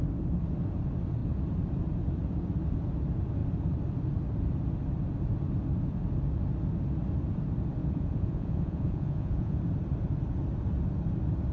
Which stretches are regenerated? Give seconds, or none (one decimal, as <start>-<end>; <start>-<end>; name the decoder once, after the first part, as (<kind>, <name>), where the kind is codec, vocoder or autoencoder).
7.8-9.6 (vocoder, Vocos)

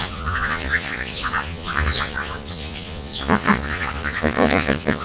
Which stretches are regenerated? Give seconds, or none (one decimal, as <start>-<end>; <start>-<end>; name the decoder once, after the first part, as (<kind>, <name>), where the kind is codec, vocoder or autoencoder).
0.0-5.0 (vocoder, Vocos)

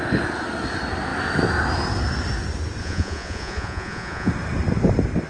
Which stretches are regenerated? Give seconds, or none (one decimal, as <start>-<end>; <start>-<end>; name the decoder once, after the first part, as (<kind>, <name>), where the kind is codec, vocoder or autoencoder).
2.8-4.3 (vocoder, Vocos)